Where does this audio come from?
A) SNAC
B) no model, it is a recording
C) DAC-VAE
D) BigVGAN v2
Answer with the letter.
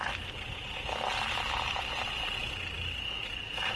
B